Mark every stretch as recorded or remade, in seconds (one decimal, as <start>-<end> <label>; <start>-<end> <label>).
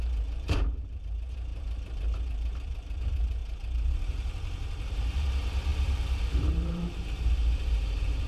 0.0-8.3 remade